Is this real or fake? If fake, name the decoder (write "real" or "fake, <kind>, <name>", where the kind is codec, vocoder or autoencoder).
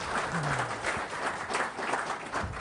real